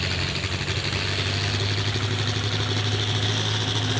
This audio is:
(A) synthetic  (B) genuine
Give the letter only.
B